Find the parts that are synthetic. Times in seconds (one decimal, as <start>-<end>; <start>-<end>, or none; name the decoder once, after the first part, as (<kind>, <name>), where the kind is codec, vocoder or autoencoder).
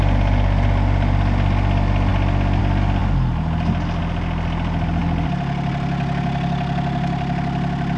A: 5.0-5.7 (vocoder, BigVGAN v2)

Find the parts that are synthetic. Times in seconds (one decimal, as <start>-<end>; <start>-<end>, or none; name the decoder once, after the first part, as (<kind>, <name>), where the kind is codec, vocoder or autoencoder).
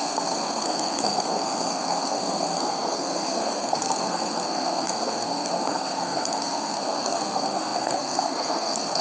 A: 0.0-9.0 (codec, SNAC)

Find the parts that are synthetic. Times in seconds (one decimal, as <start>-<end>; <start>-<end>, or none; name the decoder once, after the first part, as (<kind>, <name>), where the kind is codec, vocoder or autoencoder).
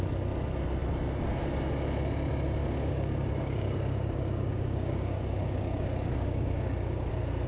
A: 2.6-7.1 (codec, DAC)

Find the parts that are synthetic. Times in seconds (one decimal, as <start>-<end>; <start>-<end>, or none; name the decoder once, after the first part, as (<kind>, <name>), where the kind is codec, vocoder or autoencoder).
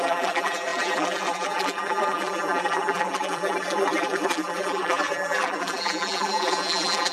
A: 0.0-7.1 (vocoder, BigVGAN v2)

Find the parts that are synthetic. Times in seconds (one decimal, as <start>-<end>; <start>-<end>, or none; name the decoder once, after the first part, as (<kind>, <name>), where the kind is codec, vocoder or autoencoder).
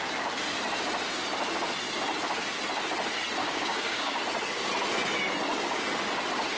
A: 3.4-4.2 (codec, DAC)